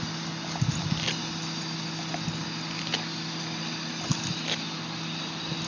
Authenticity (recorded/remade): recorded